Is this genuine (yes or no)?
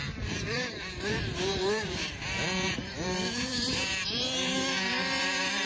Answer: no